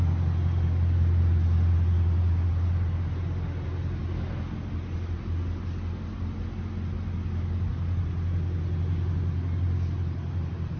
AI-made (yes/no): no